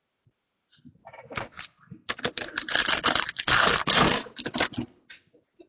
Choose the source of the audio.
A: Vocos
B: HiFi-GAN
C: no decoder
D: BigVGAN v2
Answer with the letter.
C